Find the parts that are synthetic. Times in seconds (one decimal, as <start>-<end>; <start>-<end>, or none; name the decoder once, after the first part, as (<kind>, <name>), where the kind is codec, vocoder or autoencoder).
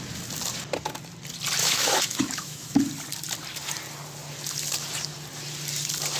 1.6-2.8 (autoencoder, DAC-VAE)